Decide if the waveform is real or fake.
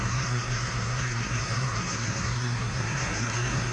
fake